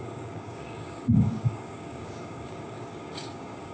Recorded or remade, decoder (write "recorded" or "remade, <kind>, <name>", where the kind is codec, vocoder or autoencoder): remade, codec, DAC